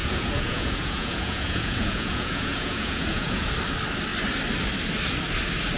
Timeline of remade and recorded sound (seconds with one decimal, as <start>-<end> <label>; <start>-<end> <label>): 0.0-3.5 remade; 3.5-5.8 recorded